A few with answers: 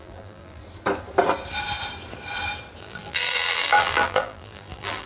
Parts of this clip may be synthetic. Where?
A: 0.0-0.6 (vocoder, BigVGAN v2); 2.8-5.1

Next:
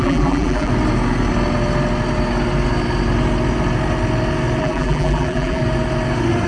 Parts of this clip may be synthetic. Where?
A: 0.0-0.7 (vocoder, BigVGAN v2); 4.6-5.6

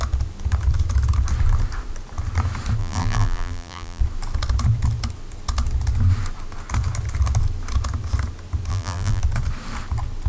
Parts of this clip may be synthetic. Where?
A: 2.8-4.0 (vocoder, BigVGAN v2); 8.7-9.2

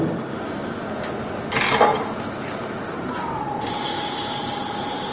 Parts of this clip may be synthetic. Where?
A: 1.9-5.1 (vocoder, BigVGAN v2)

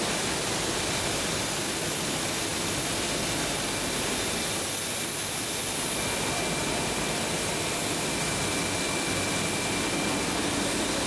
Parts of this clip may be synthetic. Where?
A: none

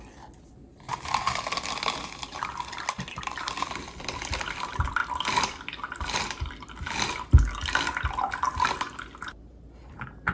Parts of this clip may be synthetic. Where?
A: none

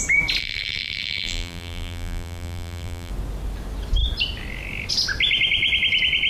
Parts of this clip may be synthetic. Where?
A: 0.4-3.1 (vocoder, BigVGAN v2)